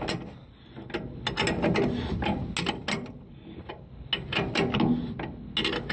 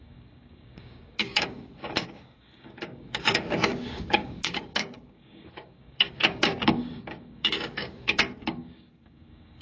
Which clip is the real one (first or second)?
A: first